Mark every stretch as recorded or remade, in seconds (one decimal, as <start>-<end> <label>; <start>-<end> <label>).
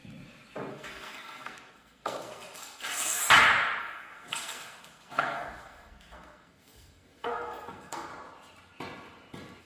0.0-0.7 recorded; 0.7-3.2 remade; 3.2-3.8 recorded; 3.8-8.1 remade; 8.1-9.6 recorded